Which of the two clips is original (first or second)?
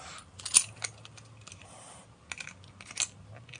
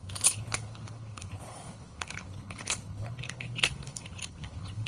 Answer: first